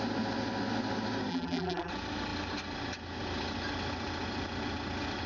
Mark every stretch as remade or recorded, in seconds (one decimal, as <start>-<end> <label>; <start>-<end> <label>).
0.0-1.3 recorded; 1.3-1.9 remade; 1.9-5.3 recorded